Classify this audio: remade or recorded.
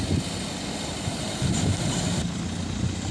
recorded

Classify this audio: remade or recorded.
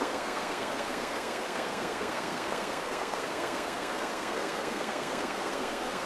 remade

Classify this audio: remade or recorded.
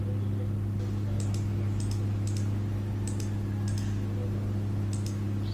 recorded